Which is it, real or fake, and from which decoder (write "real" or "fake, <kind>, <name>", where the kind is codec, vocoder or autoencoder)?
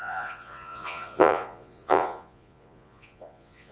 fake, vocoder, Vocos